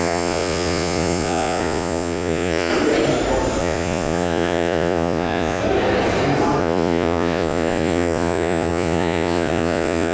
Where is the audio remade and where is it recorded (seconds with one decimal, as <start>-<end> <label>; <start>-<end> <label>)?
0.0-2.7 remade; 2.7-3.6 recorded; 3.6-5.6 remade; 5.6-6.6 recorded; 6.6-10.1 remade